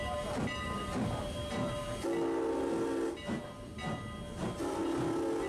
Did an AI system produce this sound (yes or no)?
no